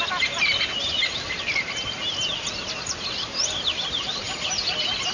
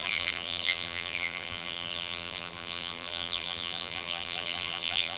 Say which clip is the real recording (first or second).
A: first